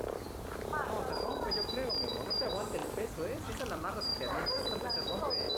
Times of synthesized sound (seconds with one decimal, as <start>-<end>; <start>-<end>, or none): 0.0-4.1